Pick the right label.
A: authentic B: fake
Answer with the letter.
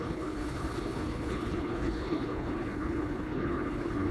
B